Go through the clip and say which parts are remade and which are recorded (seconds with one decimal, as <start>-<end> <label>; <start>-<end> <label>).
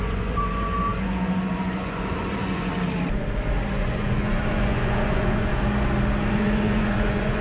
0.0-2.7 remade; 2.7-3.7 recorded; 3.7-5.5 remade; 5.5-6.3 recorded; 6.3-7.4 remade